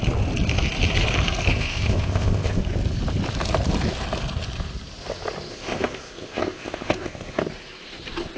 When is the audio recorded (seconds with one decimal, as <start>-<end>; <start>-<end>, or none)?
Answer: 0.0-1.5; 2.6-5.5; 7.4-8.4